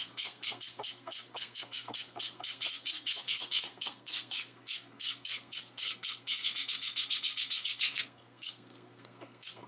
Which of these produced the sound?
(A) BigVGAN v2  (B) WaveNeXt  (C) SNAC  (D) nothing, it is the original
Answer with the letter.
C